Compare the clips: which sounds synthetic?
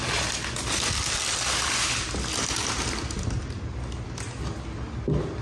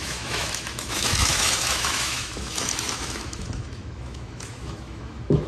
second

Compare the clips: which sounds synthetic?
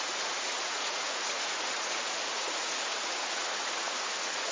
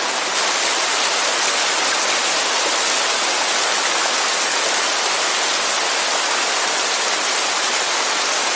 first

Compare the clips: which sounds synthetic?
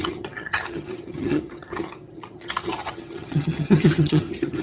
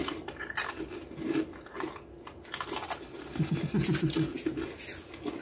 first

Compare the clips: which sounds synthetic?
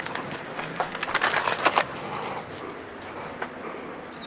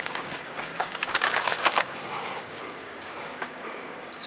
second